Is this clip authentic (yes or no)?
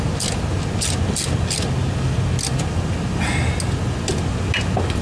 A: yes